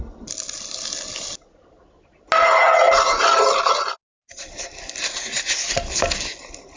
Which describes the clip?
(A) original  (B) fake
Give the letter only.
A